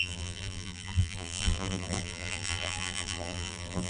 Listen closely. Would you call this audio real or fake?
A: fake